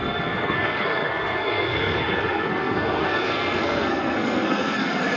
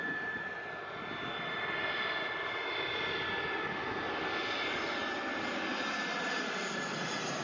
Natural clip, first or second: second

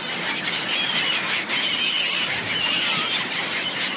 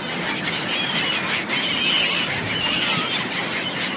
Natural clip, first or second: second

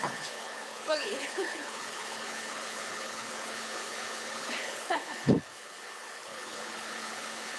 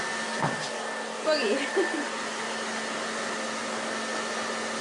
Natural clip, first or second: second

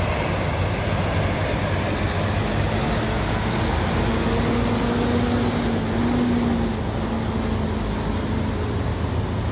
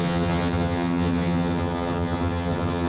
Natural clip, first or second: first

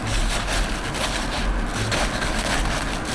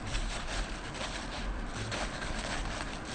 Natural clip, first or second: first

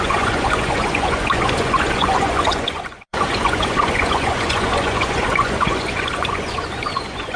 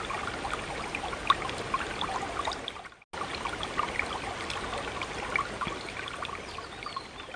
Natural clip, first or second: second